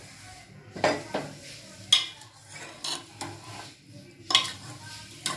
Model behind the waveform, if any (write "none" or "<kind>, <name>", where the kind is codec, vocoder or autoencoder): none